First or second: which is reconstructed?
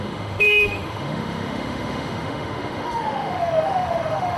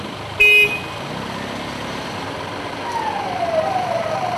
first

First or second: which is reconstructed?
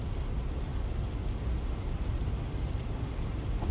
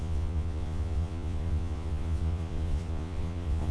second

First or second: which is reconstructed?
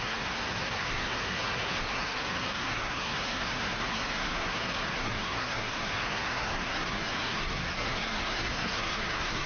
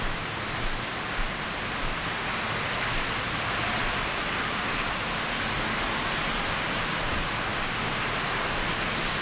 first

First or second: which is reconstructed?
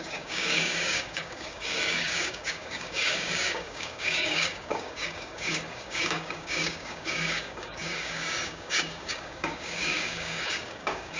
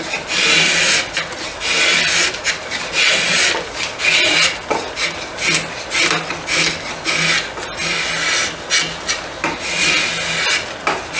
first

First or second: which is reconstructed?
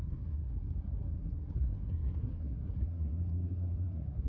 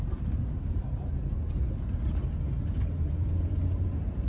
first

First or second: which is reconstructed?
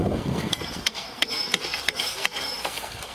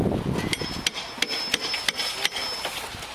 first